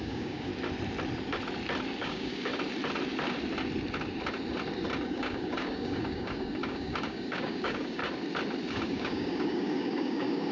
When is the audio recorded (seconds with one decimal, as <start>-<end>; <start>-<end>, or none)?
0.5-2.0; 2.5-5.1; 8.0-8.7